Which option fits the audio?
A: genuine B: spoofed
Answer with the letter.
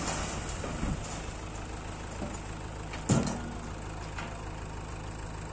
A